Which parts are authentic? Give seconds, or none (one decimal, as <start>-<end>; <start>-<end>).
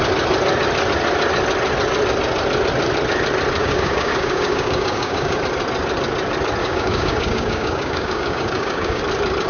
0.0-3.6; 5.4-6.6; 9.0-9.5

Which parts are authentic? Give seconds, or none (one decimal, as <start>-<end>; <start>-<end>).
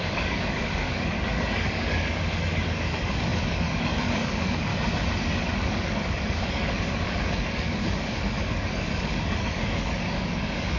4.7-5.4